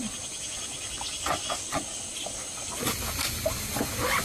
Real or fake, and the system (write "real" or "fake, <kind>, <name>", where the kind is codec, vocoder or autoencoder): real